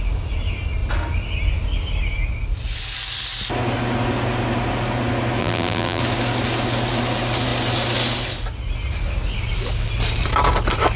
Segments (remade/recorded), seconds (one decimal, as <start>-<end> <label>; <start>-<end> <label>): 0.0-5.4 recorded; 5.4-6.0 remade; 6.0-11.0 recorded